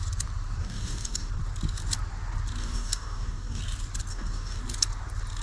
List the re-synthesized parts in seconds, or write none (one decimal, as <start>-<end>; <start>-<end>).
0.6-1.3; 2.6-3.6; 4.1-4.6